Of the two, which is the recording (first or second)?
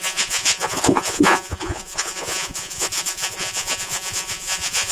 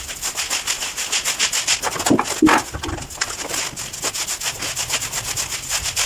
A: second